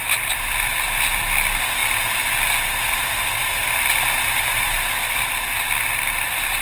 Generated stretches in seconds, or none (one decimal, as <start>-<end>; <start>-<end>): none